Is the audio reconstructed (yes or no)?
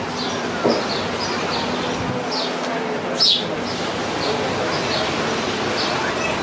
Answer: no